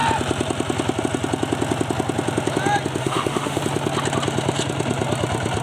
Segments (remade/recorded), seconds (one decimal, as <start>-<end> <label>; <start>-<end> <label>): 0.0-3.0 recorded; 3.0-3.6 remade; 3.6-5.6 recorded